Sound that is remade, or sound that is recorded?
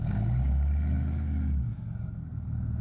remade